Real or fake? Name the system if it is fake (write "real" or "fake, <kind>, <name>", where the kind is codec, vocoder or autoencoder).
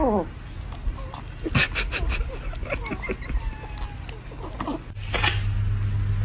real